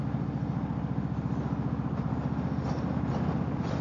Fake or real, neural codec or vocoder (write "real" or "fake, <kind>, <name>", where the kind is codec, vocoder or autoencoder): real